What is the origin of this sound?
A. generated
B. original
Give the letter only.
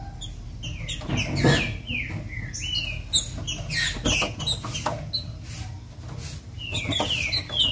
B